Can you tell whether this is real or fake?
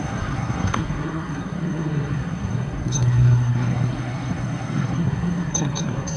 fake